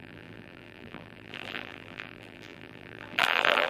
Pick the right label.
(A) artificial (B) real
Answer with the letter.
A